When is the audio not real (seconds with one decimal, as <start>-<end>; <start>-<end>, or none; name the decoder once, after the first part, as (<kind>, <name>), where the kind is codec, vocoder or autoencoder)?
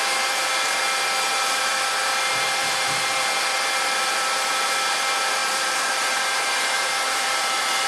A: 0.0-7.9 (vocoder, BigVGAN v2)